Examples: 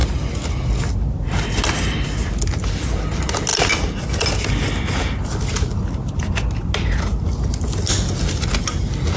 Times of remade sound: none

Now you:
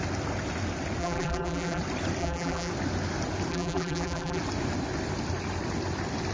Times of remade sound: 1.0-1.8 (vocoder, BigVGAN v2); 2.2-2.7; 3.5-4.4

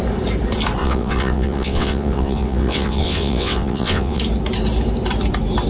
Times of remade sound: 0.8-4.2 (vocoder, WaveNeXt)